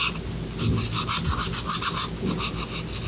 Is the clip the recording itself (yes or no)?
yes